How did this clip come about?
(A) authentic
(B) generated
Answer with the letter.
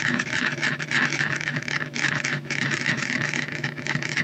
B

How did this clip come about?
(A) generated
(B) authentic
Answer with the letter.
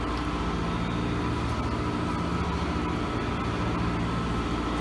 B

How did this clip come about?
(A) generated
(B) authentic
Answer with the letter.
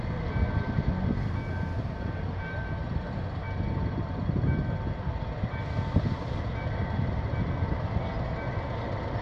B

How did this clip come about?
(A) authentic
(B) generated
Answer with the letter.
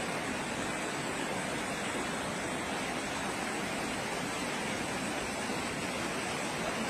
A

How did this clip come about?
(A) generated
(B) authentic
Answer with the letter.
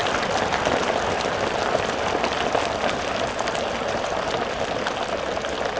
B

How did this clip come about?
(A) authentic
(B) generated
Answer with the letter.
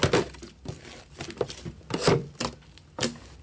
A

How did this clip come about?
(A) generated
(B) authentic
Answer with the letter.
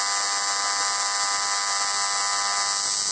B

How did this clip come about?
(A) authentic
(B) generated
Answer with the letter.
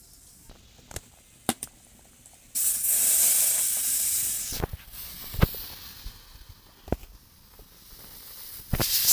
A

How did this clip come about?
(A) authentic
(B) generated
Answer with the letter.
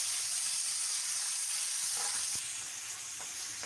A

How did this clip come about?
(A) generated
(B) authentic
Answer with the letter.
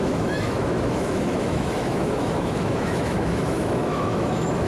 A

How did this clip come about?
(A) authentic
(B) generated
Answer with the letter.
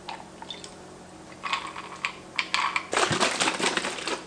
A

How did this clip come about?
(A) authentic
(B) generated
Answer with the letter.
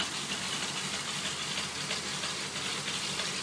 A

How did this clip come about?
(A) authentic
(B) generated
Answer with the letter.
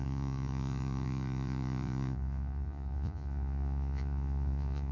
B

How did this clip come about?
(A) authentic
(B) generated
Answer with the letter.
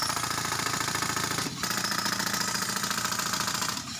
A